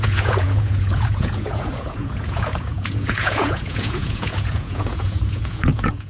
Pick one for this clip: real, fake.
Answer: fake